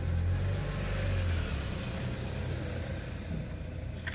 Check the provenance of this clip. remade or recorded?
recorded